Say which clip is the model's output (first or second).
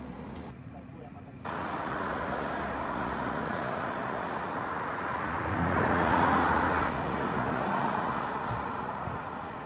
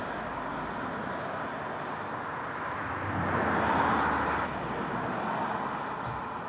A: first